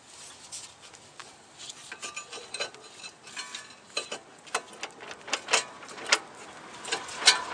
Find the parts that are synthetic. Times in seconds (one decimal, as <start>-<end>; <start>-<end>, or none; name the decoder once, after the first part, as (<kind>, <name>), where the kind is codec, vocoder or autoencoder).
none